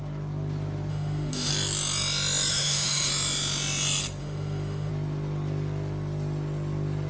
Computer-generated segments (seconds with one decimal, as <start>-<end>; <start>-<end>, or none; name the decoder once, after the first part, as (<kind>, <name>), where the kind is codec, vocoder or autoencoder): 0.9-1.5 (autoencoder, DAC-VAE); 2.5-3.1; 4.2-4.9